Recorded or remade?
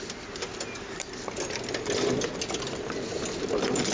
recorded